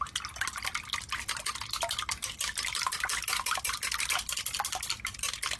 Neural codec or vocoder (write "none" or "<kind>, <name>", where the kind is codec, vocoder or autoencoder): none